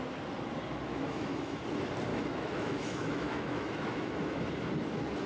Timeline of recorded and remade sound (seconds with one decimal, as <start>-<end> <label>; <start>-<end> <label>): 0.0-0.9 recorded; 0.9-1.6 remade; 1.6-2.1 recorded; 2.1-4.5 remade; 4.5-5.3 recorded